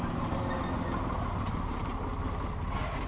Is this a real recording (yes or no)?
yes